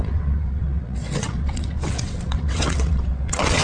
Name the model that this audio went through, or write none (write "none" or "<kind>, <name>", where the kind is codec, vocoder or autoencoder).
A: vocoder, WaveNeXt